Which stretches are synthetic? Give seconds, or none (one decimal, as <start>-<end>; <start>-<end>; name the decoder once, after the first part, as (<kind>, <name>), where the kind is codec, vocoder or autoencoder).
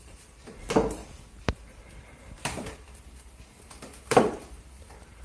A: 0.0-1.0 (vocoder, BigVGAN v2); 1.5-5.2